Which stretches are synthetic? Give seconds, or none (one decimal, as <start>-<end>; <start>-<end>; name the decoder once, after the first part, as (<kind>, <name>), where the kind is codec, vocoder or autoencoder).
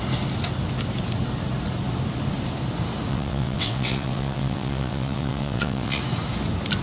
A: 3.1-6.0 (vocoder, WaveNeXt)